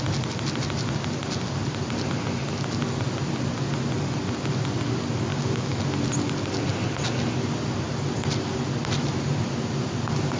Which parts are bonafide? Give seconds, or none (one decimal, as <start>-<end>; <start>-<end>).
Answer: 0.0-5.3; 5.8-10.4